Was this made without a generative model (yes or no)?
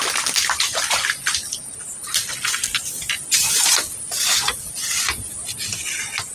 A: yes